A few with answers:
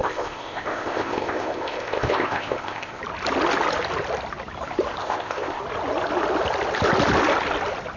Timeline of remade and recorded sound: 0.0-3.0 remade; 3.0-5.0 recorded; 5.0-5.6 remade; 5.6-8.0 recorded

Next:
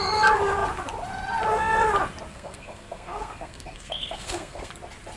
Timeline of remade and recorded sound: 0.0-2.3 recorded; 2.3-4.7 remade; 4.7-5.2 recorded

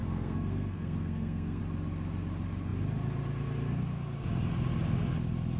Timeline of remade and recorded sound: 0.0-1.6 remade; 1.6-5.6 recorded

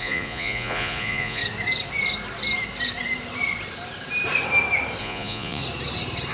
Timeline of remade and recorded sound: 0.0-1.4 remade; 1.4-5.0 recorded; 5.0-5.6 remade; 5.6-6.3 recorded

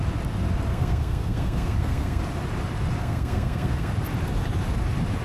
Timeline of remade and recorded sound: 0.0-0.7 recorded; 0.7-2.2 remade; 2.2-3.0 recorded; 3.0-3.9 remade; 3.9-5.2 recorded